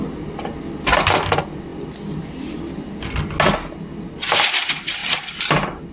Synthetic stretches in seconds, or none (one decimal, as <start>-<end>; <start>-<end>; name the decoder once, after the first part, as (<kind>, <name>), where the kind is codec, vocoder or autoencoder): none